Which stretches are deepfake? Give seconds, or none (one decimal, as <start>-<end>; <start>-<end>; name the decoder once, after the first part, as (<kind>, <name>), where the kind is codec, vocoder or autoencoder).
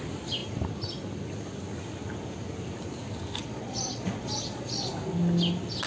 3.4-4.9 (vocoder, Vocos)